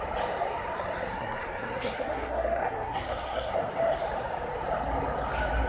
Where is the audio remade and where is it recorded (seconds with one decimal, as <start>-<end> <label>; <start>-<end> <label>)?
0.0-1.1 recorded; 1.1-3.7 remade; 3.7-5.7 recorded